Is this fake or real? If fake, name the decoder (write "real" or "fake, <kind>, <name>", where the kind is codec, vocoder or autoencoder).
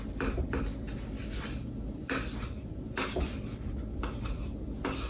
real